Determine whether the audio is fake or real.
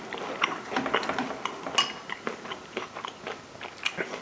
real